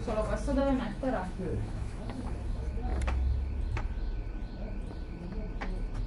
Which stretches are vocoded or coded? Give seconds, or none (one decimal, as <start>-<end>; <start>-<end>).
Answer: 0.6-2.3